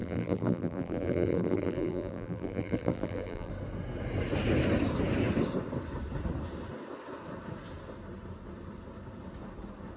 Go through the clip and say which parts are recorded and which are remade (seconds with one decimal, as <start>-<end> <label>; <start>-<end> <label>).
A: 0.0-3.5 remade; 3.5-10.0 recorded